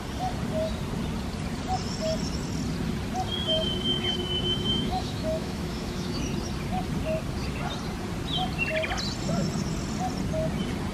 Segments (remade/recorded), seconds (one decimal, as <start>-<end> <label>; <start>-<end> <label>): 0.0-3.5 recorded; 3.5-6.2 remade; 6.2-10.9 recorded